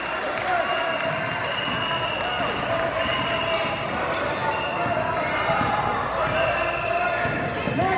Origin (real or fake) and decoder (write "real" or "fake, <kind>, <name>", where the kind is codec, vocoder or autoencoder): real